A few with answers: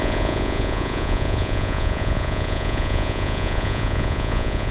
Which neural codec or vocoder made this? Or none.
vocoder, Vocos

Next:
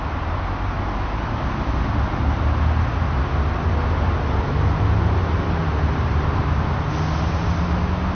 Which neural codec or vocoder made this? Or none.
none